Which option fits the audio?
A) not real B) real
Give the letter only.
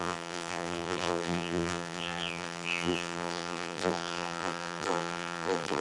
A